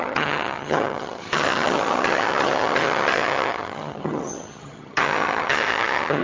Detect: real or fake fake